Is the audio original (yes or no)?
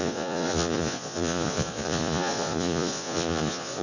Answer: no